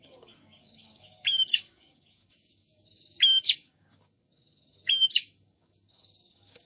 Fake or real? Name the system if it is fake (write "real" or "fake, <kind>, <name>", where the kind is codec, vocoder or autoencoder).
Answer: fake, codec, DAC